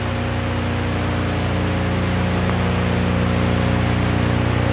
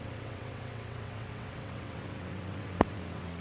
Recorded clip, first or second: first